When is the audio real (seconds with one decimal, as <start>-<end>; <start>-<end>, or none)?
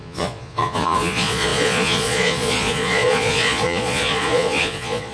none